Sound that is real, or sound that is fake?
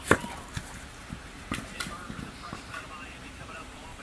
fake